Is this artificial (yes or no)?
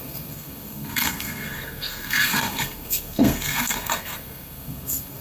yes